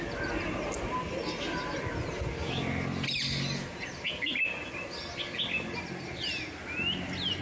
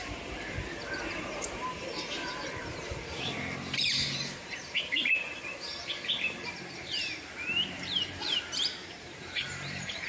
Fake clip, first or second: second